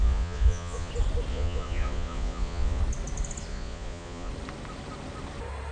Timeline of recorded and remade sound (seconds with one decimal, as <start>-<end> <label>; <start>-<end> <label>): 0.0-0.9 remade; 0.9-1.3 recorded; 1.3-2.8 remade; 2.8-3.5 recorded; 3.5-4.3 remade; 4.3-5.7 recorded

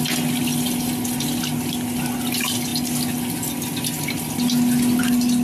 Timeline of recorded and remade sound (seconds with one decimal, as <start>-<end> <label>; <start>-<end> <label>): 0.0-5.4 recorded